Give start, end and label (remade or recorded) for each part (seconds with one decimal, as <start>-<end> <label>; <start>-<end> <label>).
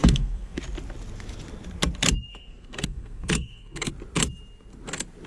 0.0-0.6 remade; 0.6-2.3 recorded; 2.3-3.9 remade; 3.9-5.3 recorded